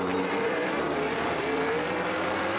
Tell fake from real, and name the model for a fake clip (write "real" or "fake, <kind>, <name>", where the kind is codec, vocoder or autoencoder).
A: fake, vocoder, BigVGAN v2